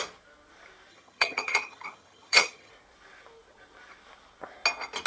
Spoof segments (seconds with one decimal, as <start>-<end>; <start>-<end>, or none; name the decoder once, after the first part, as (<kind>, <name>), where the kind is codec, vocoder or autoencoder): 0.9-2.7 (vocoder, HiFi-GAN)